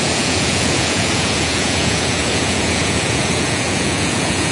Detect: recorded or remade remade